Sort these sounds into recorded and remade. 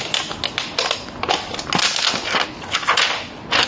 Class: recorded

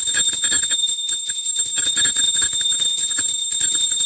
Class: recorded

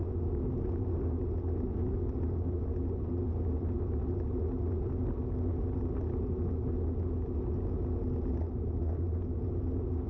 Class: recorded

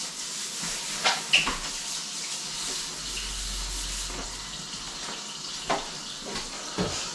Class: recorded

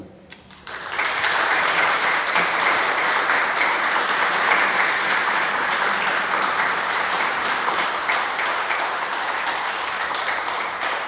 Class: remade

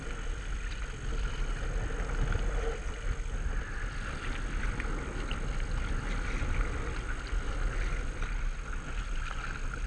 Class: recorded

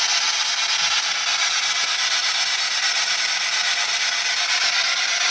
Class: recorded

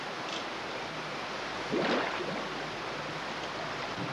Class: remade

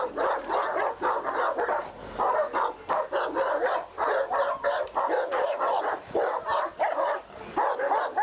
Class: recorded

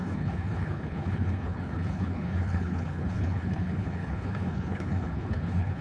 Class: remade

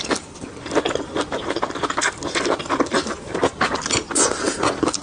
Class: recorded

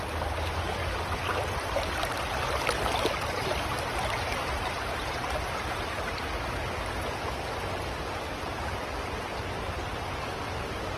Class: recorded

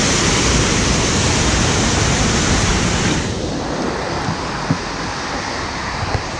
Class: recorded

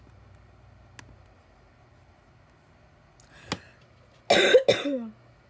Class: recorded